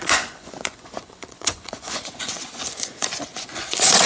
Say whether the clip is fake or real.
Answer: fake